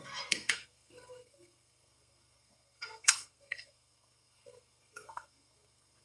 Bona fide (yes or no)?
no